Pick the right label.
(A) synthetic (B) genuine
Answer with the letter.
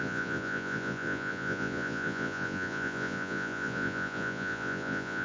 A